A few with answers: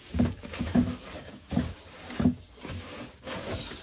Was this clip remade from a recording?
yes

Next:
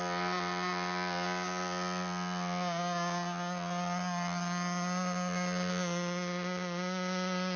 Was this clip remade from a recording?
no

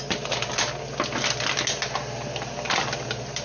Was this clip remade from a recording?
no